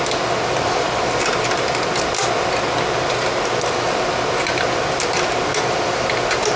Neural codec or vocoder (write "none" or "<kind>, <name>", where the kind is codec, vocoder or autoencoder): none